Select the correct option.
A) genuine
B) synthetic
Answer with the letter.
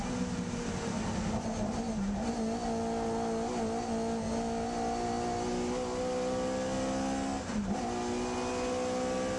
A